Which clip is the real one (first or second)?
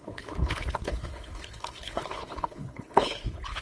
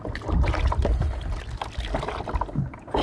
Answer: second